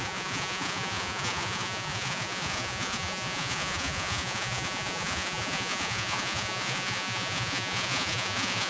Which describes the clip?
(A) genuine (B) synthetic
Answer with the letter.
B